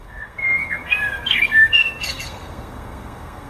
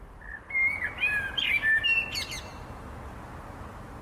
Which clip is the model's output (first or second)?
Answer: first